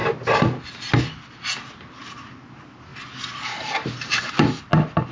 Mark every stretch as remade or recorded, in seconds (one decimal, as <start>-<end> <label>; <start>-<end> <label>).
0.0-5.1 recorded

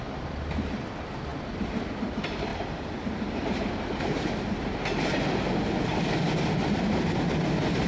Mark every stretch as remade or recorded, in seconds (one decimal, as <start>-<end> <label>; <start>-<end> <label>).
0.0-7.9 recorded

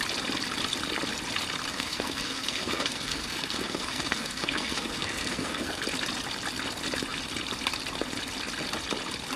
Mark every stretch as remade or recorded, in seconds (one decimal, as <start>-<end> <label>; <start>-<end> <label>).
0.0-1.7 recorded; 1.7-5.8 remade; 5.8-9.4 recorded

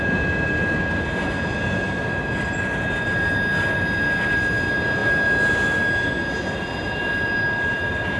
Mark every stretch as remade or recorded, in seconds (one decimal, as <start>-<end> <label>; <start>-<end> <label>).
0.0-8.2 recorded

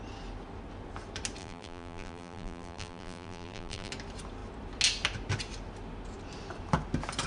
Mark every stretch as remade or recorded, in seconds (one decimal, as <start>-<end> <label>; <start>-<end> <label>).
0.0-1.4 recorded; 1.4-3.9 remade; 3.9-7.3 recorded

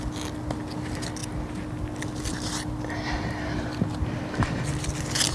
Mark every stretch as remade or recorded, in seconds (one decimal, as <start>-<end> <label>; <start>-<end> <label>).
0.0-5.3 recorded